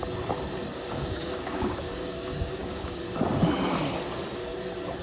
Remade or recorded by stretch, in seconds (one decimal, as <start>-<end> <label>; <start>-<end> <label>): 0.0-0.7 recorded; 0.7-3.0 remade; 3.0-5.0 recorded